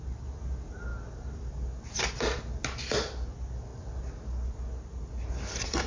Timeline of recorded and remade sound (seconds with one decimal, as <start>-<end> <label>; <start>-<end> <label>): 0.0-5.9 recorded